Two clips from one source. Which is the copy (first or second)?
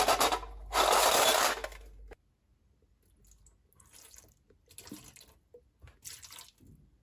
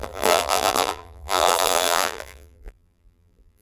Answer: second